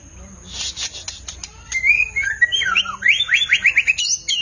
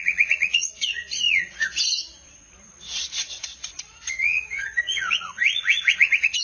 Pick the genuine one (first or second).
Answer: first